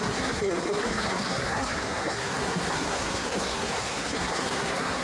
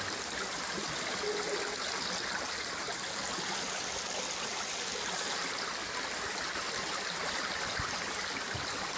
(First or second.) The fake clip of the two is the first